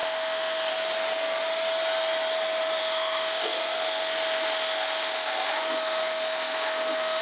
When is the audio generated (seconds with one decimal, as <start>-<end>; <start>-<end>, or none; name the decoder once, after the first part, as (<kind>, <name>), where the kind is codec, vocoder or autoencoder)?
0.0-0.7 (autoencoder, DAC-VAE); 2.8-7.2